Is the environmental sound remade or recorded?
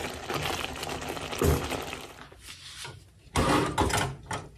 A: recorded